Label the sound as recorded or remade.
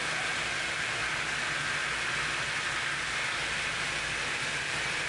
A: recorded